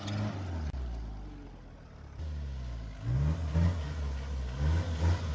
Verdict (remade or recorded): recorded